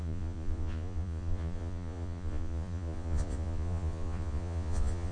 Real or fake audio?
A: fake